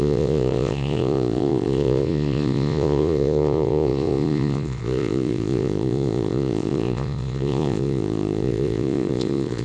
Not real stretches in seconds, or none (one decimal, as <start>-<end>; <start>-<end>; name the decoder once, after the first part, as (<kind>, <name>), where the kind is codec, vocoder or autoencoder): 0.0-9.6 (vocoder, Vocos)